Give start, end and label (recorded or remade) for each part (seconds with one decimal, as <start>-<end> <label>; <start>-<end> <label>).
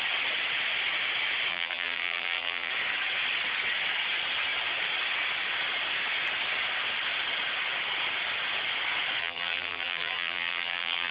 0.0-1.5 recorded; 1.5-2.7 remade; 2.7-9.2 recorded; 9.2-11.1 remade